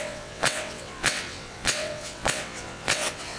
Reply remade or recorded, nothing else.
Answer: remade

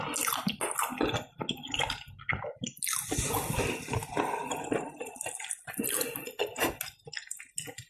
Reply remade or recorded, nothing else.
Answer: recorded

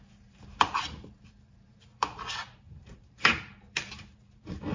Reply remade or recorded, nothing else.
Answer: remade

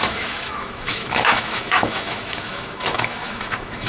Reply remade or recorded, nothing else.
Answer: remade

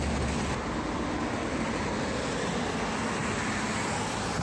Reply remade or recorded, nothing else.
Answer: recorded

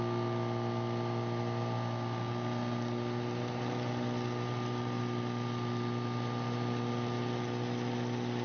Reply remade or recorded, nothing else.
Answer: recorded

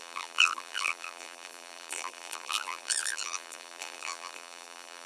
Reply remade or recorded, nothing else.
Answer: remade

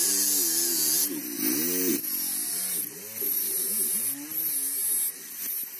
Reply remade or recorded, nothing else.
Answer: recorded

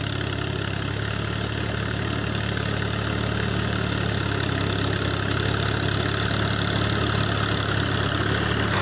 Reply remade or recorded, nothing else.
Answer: recorded